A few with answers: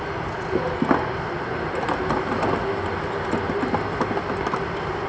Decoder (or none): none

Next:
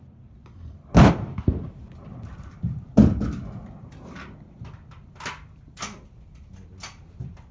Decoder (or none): none